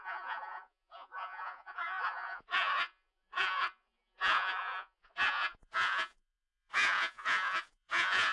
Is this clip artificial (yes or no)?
yes